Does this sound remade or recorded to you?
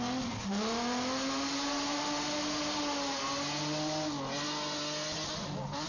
recorded